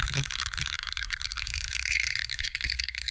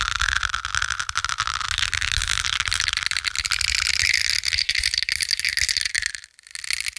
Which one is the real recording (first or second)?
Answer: second